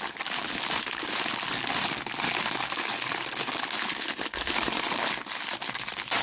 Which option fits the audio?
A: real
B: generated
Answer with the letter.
A